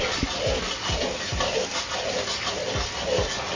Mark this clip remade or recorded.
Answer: recorded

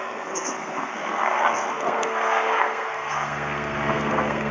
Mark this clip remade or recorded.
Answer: remade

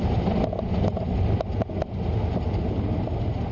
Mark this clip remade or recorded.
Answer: recorded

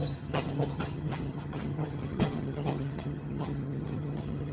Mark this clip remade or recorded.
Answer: remade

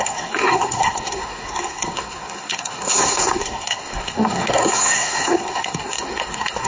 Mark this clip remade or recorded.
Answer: remade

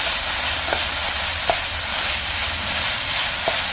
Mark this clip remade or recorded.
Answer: recorded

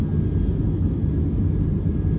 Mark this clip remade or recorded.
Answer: recorded